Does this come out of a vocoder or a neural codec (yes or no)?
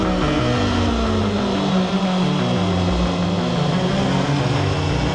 no